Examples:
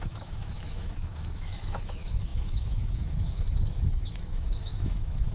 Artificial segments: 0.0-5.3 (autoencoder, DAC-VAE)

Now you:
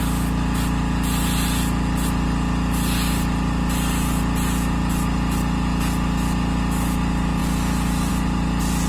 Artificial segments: none

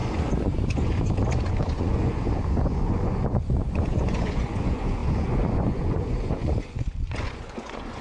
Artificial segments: 0.0-8.0 (vocoder, Vocos)

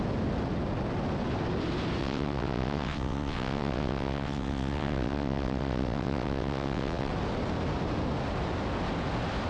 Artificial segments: 2.0-7.1 (vocoder, WaveNeXt)

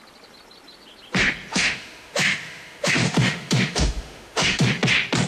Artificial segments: 1.5-4.7 (autoencoder, DAC-VAE)

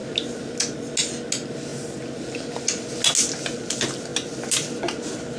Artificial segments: none

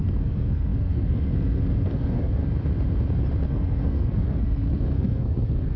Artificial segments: 0.0-2.4 (codec, SNAC); 3.5-5.8

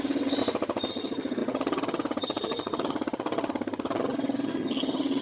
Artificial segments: 0.0-0.4 (vocoder, HiFi-GAN); 0.9-5.2